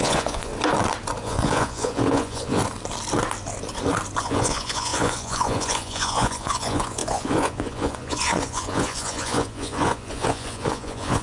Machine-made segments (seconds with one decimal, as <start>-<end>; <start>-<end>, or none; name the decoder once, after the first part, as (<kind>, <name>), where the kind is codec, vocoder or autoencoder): 0.0-0.5 (vocoder, Vocos); 1.2-2.6; 4.2-11.2